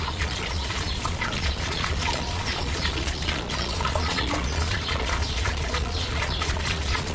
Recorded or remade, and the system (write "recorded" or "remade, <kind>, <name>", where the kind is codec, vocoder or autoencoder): remade, vocoder, Vocos